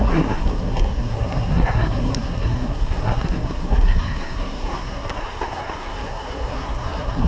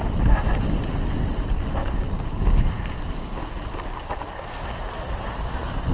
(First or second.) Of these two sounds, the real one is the second